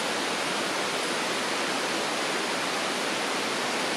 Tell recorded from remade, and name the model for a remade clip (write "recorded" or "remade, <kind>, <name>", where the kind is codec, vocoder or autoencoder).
recorded